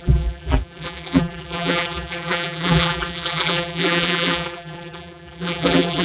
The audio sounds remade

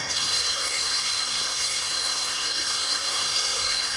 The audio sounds remade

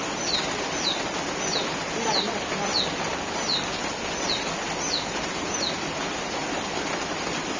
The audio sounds recorded